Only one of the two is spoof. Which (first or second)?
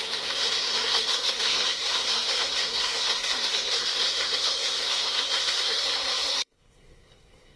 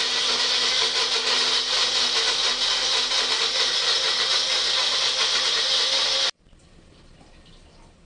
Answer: first